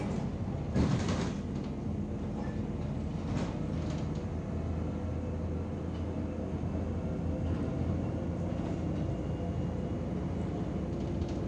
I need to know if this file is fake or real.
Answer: real